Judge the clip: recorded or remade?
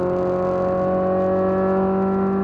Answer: recorded